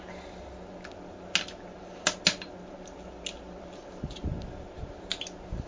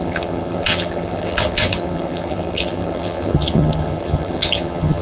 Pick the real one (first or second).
first